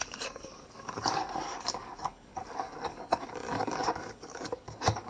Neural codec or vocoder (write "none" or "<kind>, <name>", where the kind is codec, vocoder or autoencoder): codec, DAC